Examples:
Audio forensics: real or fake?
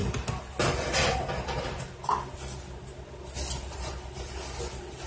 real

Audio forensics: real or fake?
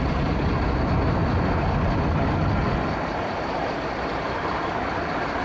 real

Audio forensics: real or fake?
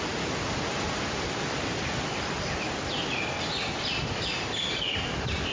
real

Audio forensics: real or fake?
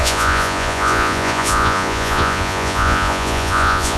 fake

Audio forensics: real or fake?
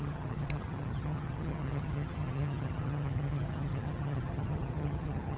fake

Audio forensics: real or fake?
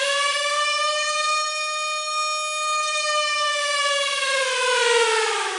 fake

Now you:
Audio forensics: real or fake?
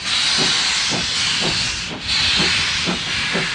real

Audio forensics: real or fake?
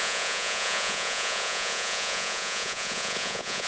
fake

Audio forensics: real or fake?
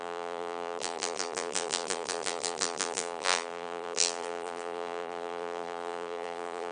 fake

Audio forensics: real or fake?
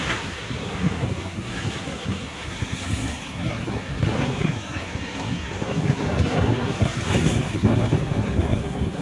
fake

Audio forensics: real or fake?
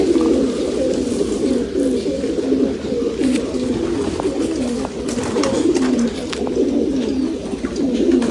real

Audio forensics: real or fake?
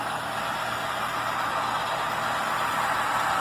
real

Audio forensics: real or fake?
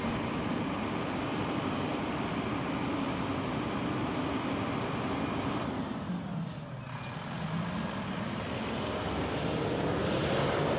real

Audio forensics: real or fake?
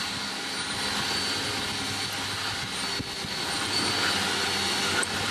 real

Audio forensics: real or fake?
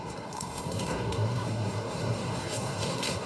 fake